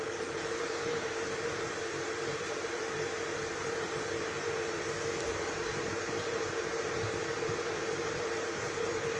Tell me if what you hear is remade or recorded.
remade